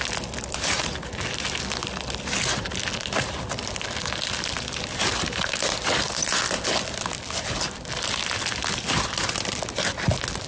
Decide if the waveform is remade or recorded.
recorded